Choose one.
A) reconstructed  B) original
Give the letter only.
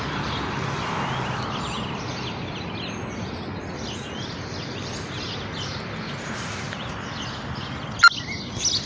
B